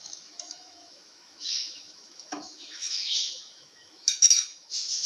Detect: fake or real fake